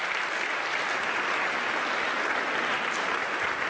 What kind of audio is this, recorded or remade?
recorded